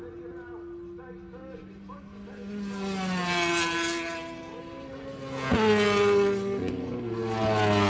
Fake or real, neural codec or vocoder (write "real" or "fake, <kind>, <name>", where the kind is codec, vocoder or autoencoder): real